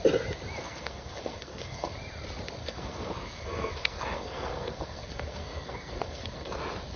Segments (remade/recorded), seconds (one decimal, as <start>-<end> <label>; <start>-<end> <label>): 0.0-0.6 recorded; 0.6-1.9 remade; 1.9-2.6 recorded; 2.6-6.6 remade; 6.6-7.0 recorded